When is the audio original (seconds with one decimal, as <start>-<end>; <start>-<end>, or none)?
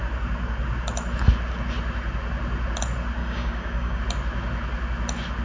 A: 0.0-3.2; 4.0-5.4